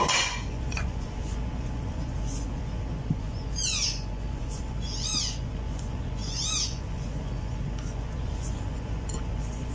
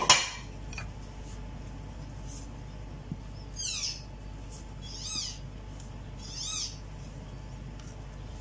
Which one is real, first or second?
second